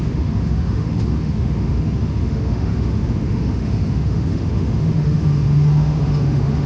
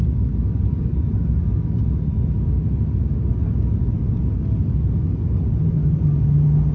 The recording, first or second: second